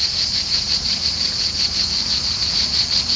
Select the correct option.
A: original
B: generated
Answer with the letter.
A